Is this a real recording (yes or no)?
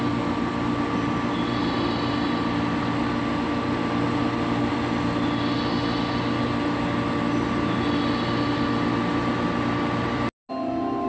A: yes